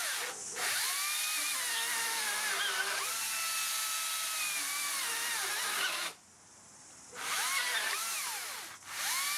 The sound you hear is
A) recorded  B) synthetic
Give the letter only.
A